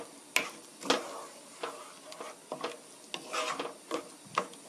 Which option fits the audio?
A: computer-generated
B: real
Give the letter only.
B